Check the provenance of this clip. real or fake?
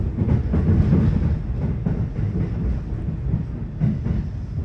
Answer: real